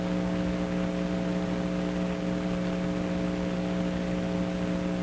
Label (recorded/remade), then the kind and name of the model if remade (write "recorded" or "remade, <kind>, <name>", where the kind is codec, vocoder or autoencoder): recorded